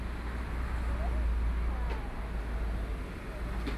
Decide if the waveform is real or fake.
real